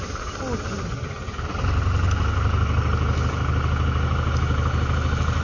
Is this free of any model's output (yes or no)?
yes